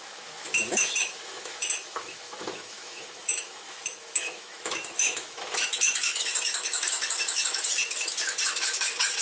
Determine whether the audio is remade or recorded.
remade